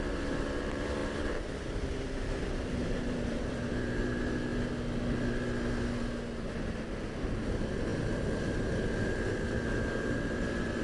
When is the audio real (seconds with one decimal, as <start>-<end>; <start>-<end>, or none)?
4.5-7.1